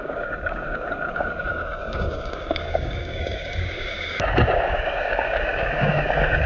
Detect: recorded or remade remade